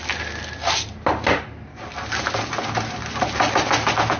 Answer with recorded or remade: recorded